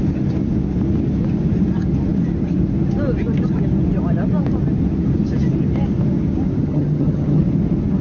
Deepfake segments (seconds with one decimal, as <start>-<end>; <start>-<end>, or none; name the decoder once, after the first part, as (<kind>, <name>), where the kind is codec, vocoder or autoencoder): 6.6-7.4 (vocoder, HiFi-GAN)